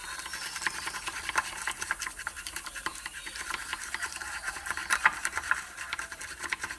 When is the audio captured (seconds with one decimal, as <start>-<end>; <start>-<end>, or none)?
0.0-2.1